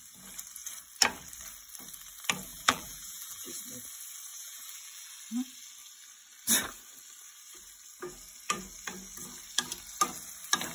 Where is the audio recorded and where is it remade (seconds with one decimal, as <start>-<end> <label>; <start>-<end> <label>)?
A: 0.0-2.5 recorded; 2.5-3.6 remade; 3.6-4.3 recorded; 4.3-5.1 remade; 5.1-10.7 recorded